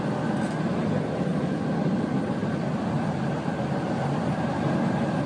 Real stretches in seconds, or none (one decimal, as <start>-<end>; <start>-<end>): 0.0-5.3